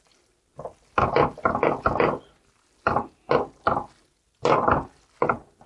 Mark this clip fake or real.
real